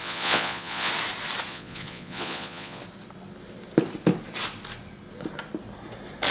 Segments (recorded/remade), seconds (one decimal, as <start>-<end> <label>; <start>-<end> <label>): 0.0-0.9 remade; 0.9-1.5 recorded; 1.5-2.8 remade; 2.8-6.3 recorded